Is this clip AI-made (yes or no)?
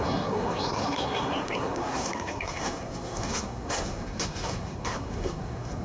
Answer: yes